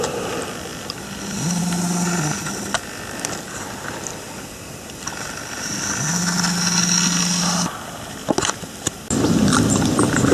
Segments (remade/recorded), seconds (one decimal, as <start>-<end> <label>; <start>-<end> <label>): 0.0-10.3 recorded